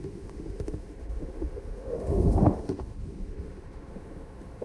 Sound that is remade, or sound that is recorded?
remade